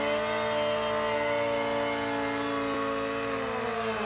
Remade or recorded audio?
recorded